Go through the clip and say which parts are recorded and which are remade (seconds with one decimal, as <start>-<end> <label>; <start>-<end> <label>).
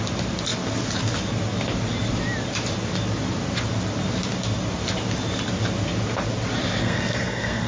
0.0-6.8 recorded; 6.8-7.7 remade